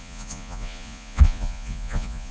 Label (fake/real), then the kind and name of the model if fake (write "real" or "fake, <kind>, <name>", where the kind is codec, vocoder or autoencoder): fake, vocoder, Vocos